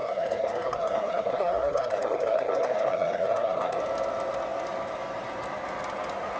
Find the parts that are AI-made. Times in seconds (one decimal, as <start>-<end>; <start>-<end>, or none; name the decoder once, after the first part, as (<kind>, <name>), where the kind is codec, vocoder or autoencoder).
0.0-3.8 (codec, SNAC)